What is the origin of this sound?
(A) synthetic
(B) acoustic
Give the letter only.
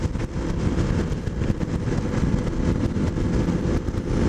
B